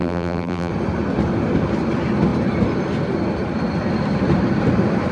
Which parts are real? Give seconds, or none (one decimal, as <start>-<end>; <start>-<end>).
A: 0.7-5.1

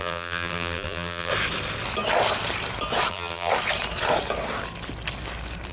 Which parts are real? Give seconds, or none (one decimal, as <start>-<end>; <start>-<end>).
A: 1.3-3.1; 3.5-5.7

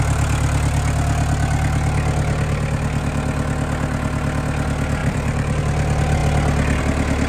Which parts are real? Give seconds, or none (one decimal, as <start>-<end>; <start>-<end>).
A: 0.0-5.0; 5.6-7.3

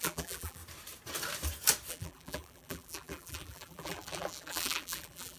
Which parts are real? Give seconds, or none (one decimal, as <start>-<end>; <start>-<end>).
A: 0.6-1.9

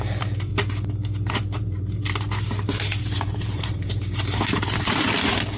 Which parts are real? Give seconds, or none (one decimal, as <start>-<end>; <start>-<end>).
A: 0.5-1.3